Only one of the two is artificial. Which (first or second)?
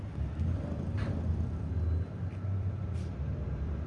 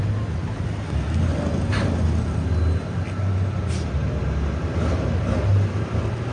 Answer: first